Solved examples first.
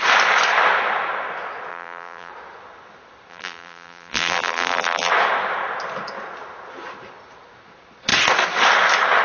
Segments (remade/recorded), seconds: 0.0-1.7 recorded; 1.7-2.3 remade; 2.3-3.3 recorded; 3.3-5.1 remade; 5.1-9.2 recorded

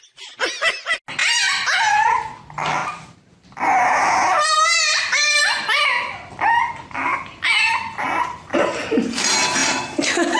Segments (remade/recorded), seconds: 0.0-2.8 recorded; 2.8-3.3 remade; 3.3-9.6 recorded; 9.6-10.4 remade

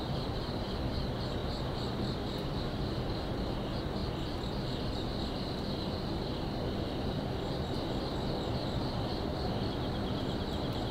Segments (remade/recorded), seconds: 0.0-10.9 recorded